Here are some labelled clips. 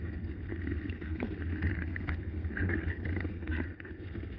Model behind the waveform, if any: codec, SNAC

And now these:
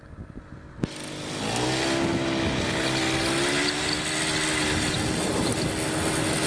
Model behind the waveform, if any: none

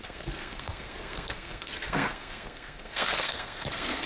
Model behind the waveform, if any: codec, SNAC